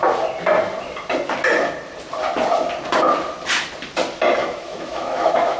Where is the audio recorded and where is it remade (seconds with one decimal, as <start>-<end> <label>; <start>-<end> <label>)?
0.0-4.4 recorded; 4.4-5.6 remade